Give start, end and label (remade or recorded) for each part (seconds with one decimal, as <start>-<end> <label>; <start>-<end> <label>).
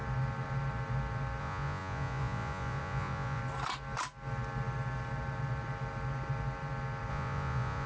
0.0-1.4 recorded; 1.4-3.4 remade; 3.4-7.1 recorded; 7.1-7.9 remade